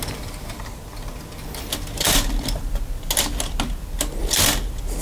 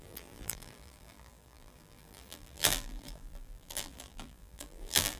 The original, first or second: first